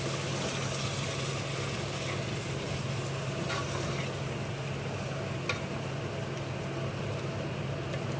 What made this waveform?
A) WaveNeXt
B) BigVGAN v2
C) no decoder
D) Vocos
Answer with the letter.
C